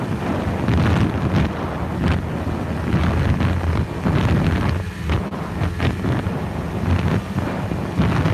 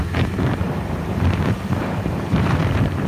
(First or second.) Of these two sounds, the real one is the first